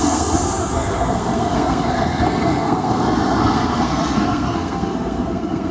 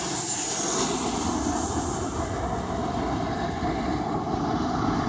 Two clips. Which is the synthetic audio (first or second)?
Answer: first